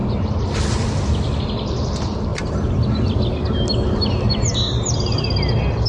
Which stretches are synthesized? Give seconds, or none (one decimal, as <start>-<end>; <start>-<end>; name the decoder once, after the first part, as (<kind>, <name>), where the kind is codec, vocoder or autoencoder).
none